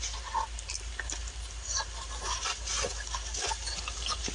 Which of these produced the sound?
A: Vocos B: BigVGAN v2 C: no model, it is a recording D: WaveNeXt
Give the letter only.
B